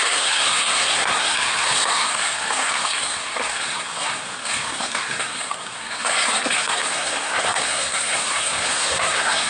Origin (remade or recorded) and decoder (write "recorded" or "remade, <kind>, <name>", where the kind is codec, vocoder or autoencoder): remade, codec, SNAC